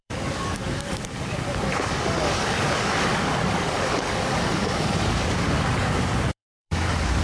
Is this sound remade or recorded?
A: remade